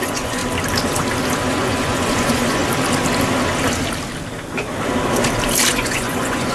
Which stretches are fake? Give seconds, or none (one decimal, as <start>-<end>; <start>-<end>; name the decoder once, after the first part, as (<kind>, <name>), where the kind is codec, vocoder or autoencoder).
0.0-0.4 (vocoder, Vocos); 1.5-2.6; 5.7-6.5

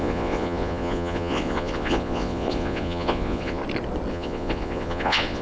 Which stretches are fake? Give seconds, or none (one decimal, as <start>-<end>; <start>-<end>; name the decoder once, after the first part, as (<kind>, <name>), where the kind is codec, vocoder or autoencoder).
0.0-3.6 (vocoder, Vocos); 4.1-5.4